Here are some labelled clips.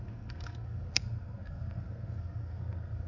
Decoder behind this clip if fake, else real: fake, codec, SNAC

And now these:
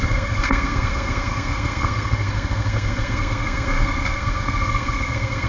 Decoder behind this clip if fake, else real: fake, codec, SNAC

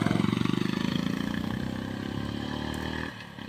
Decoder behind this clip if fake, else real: real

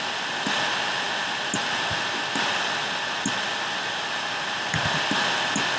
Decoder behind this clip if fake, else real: real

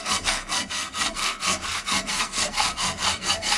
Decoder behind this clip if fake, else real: fake, codec, SNAC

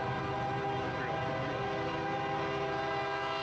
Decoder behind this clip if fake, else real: real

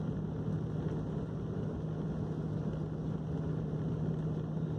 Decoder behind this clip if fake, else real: real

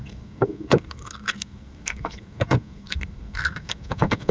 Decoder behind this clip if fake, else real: fake, codec, SNAC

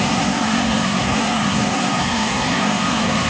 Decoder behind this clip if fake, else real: fake, codec, SNAC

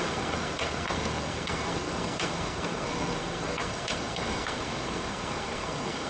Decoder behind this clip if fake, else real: fake, codec, SNAC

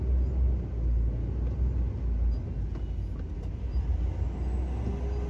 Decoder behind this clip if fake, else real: real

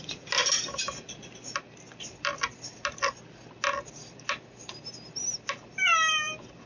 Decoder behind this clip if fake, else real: real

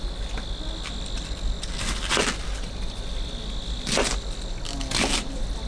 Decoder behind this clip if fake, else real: real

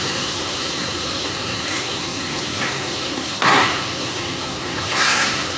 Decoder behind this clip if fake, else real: fake, codec, SNAC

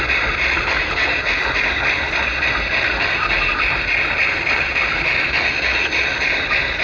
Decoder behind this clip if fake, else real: real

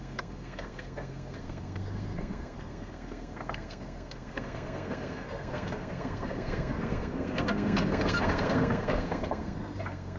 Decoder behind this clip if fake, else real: fake, codec, SNAC